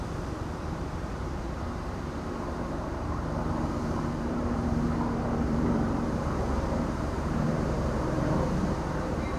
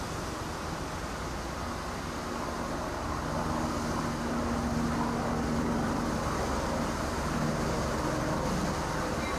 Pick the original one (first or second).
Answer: second